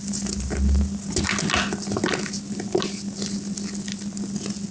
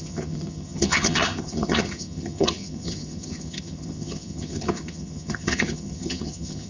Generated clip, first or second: second